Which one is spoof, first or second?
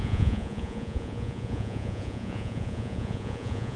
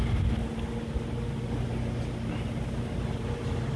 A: first